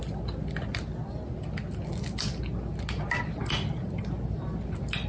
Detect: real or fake real